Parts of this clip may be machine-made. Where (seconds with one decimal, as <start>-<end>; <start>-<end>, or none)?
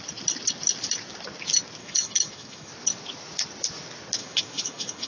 1.8-2.7; 4.2-5.1